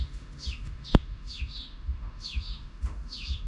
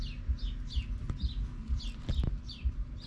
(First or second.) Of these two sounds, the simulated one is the first